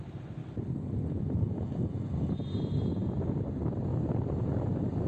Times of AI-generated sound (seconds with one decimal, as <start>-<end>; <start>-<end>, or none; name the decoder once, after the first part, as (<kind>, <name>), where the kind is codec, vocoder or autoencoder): 3.9-5.1 (vocoder, BigVGAN v2)